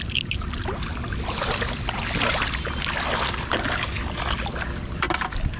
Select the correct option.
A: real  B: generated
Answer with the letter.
A